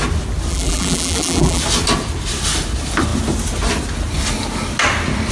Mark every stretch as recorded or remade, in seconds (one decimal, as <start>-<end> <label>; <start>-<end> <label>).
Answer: 0.0-0.5 recorded; 0.5-1.6 remade; 1.6-5.3 recorded